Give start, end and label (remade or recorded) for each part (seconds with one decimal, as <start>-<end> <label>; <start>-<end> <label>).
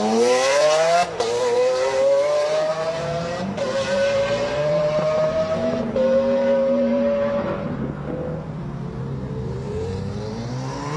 0.0-7.5 remade; 7.5-9.0 recorded; 9.0-11.0 remade